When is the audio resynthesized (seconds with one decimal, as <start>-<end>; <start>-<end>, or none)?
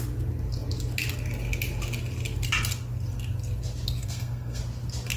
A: 4.0-4.6